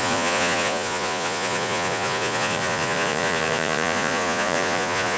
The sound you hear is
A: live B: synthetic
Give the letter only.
B